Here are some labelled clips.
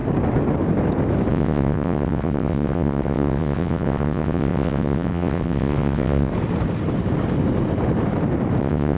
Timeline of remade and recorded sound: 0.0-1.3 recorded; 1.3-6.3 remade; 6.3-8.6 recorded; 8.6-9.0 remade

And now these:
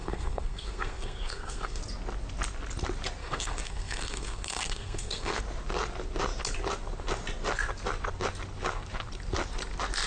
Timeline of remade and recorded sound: 0.0-1.8 remade; 1.8-3.2 recorded; 3.2-5.4 remade; 5.4-10.1 recorded

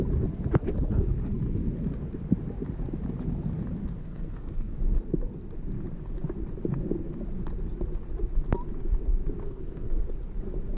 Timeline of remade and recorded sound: 0.0-3.8 recorded; 3.8-4.7 remade; 4.7-9.4 recorded; 9.4-10.0 remade; 10.0-10.8 recorded

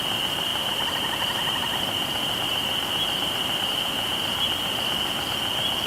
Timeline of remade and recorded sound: 0.0-0.5 recorded; 0.5-3.7 remade; 3.7-5.9 recorded